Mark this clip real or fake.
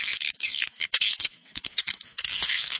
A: fake